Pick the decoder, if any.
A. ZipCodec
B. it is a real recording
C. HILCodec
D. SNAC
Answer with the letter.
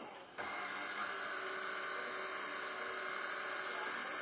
B